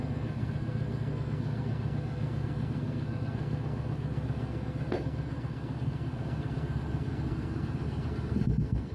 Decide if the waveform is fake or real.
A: fake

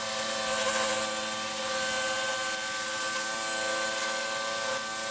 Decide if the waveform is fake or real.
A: real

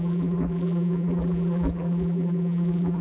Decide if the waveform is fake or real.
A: fake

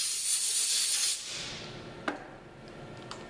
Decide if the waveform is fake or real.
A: real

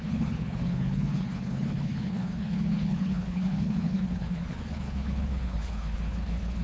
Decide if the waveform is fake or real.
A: fake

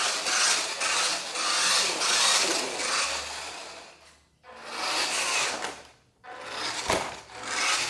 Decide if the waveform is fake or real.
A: real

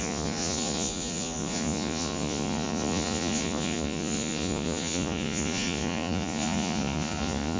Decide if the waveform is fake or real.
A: fake